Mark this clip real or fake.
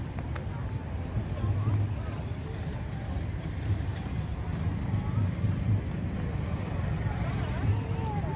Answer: real